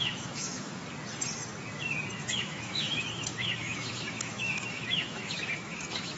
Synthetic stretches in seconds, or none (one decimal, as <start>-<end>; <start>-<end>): 0.0-0.8; 2.3-6.2